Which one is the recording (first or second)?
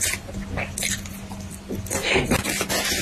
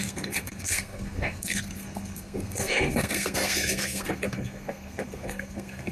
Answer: first